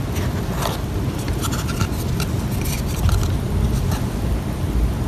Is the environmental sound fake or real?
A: real